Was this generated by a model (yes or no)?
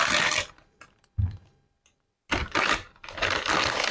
no